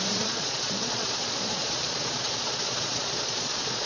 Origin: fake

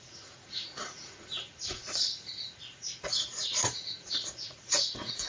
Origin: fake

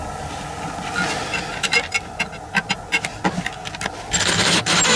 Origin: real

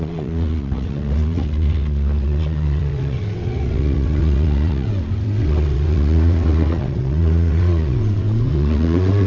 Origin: fake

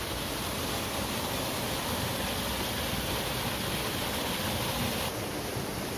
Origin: real